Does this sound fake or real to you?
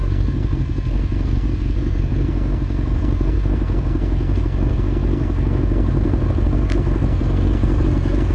fake